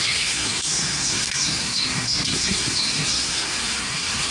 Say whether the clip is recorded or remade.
remade